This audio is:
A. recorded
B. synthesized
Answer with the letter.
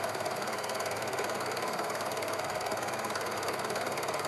B